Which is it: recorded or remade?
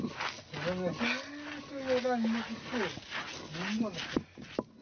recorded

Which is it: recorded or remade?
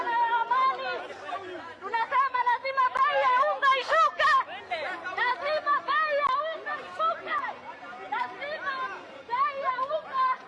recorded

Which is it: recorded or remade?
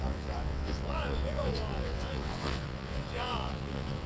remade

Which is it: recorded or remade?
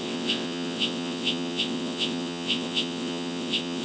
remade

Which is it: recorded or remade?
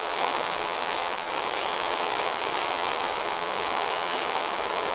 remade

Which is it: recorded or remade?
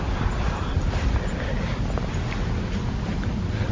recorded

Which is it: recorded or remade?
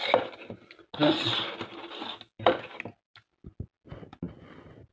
recorded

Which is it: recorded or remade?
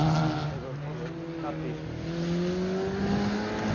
recorded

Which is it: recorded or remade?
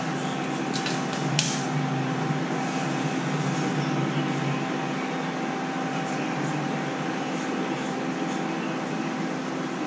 recorded